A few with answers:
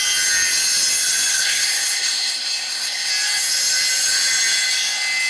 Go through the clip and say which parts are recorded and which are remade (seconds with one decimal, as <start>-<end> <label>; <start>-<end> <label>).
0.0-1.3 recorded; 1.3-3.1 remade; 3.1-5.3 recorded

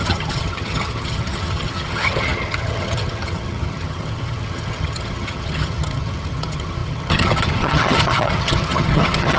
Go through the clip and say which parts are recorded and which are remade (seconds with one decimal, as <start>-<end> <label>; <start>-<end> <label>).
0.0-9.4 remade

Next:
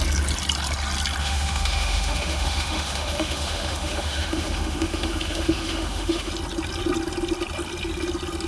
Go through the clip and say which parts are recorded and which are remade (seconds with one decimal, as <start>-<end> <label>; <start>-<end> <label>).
0.0-1.2 recorded; 1.2-6.3 remade; 6.3-8.5 recorded

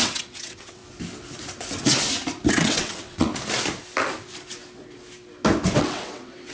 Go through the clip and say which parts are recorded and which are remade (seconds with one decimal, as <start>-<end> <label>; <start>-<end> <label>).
0.0-0.8 remade; 0.8-2.5 recorded; 2.5-3.3 remade; 3.3-5.8 recorded; 5.8-6.5 remade

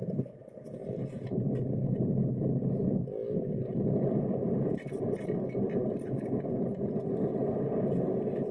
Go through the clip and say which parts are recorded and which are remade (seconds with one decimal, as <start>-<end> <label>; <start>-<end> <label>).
0.0-8.5 recorded

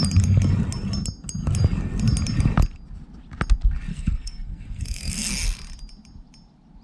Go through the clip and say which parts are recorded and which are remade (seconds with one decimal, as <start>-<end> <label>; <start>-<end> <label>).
0.0-3.9 recorded; 3.9-5.3 remade; 5.3-6.8 recorded